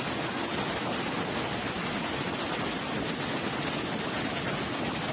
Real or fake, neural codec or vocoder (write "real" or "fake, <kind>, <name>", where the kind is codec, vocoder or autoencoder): real